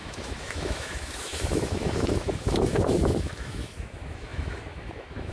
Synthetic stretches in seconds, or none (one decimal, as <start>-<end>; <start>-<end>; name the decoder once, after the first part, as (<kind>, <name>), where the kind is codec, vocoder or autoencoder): 0.0-5.3 (autoencoder, DAC-VAE)